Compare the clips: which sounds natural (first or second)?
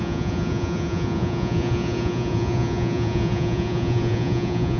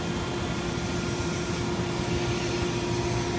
second